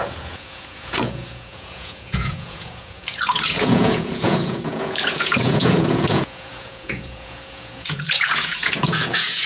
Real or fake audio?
fake